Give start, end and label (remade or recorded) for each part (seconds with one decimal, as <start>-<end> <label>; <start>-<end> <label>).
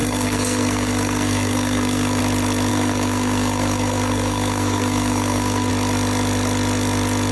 0.0-2.2 remade; 2.2-2.7 recorded; 2.7-5.7 remade; 5.7-7.3 recorded